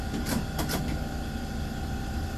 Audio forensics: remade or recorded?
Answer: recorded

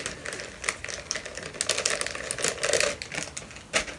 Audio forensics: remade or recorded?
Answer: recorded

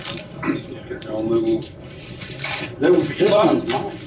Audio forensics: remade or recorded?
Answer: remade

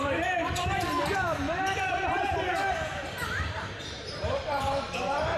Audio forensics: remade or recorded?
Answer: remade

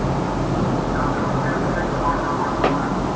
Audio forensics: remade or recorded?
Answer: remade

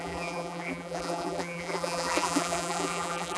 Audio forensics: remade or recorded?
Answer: remade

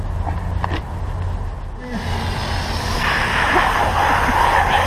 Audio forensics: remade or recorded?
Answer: recorded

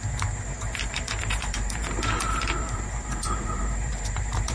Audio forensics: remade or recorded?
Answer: remade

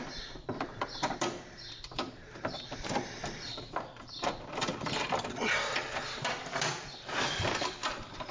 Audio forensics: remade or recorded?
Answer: remade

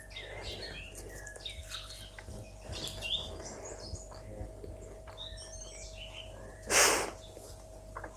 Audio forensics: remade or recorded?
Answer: recorded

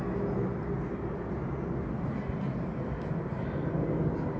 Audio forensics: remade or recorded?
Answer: recorded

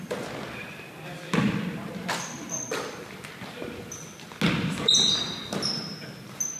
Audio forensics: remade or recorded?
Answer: recorded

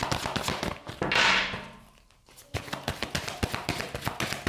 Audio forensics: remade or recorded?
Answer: recorded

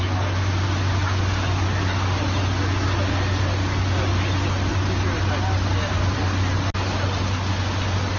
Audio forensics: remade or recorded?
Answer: recorded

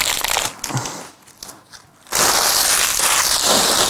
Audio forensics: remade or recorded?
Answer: recorded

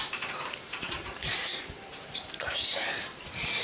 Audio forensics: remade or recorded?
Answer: remade